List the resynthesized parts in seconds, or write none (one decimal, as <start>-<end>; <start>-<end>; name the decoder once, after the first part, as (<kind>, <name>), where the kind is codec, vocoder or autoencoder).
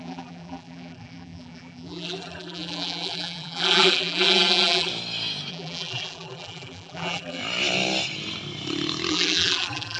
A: 0.0-4.9 (vocoder, BigVGAN v2); 5.5-7.4; 9.1-10.0